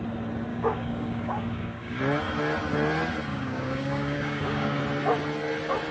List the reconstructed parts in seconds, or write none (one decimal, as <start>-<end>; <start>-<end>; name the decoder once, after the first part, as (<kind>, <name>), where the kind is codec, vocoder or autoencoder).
0.5-2.0 (codec, DAC); 3.3-4.8